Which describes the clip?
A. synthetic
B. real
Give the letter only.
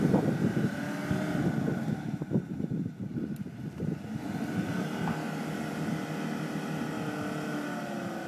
B